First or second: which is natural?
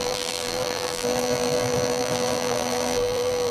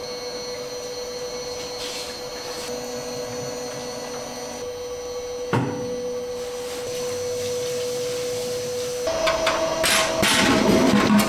second